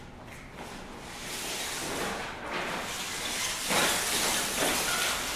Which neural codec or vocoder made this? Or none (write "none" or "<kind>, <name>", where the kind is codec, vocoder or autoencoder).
none